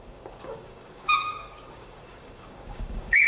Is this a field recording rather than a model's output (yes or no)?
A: no